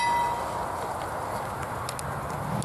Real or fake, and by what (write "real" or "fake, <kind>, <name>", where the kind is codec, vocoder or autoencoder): real